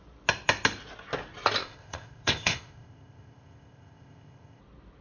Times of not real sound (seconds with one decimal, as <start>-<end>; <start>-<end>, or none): 1.6-4.6